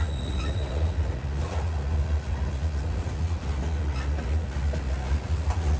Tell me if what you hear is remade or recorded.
remade